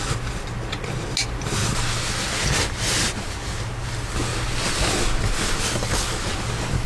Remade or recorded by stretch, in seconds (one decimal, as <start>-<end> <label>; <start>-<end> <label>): 0.0-6.9 recorded